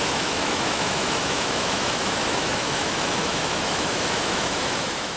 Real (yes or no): no